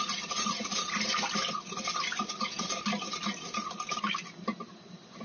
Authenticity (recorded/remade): recorded